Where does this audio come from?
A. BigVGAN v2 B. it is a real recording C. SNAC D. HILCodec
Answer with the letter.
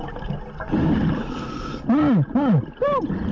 B